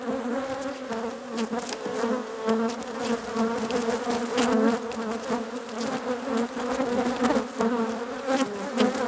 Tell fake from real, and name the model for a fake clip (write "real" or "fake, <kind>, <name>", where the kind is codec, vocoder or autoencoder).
real